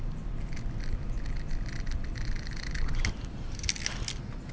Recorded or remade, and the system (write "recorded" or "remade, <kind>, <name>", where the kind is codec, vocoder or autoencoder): recorded